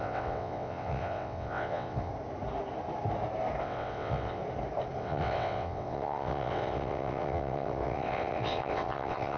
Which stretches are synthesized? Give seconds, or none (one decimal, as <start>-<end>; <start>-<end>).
0.0-2.1; 3.6-4.4; 5.0-9.4